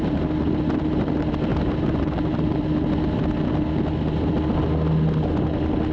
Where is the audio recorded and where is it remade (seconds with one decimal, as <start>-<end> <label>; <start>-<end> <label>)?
0.0-1.5 recorded; 1.5-2.6 remade; 2.6-5.9 recorded